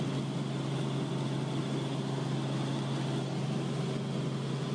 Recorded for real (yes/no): yes